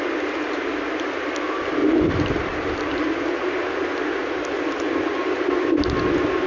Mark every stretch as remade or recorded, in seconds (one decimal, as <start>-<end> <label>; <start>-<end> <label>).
0.0-1.8 recorded; 1.8-3.0 remade; 3.0-6.5 recorded

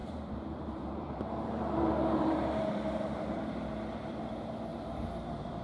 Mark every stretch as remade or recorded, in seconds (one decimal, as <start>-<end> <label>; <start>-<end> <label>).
0.0-3.4 remade; 3.4-4.7 recorded; 4.7-5.6 remade

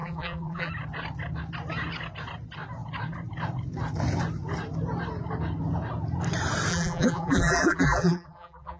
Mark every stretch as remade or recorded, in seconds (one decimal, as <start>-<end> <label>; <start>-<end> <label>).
0.0-0.7 remade; 0.7-6.7 recorded; 6.7-8.8 remade